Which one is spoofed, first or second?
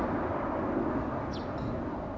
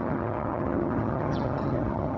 second